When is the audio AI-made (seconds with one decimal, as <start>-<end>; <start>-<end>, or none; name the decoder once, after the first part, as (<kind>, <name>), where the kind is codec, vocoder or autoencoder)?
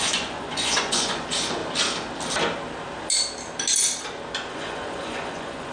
0.0-1.6 (vocoder, Vocos); 4.5-5.7